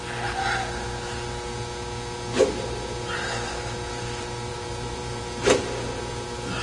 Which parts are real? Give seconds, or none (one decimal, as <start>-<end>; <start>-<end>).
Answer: 0.0-4.5; 5.3-6.6